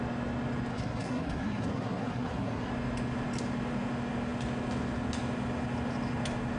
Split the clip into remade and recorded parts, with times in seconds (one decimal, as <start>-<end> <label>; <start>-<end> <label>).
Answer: 0.0-0.7 recorded; 0.7-2.7 remade; 2.7-6.6 recorded